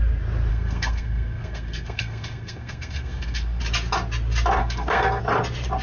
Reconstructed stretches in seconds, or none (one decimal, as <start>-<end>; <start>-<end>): 0.5-3.6; 4.6-5.2